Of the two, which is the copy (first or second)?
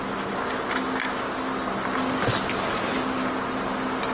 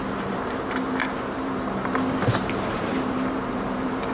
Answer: second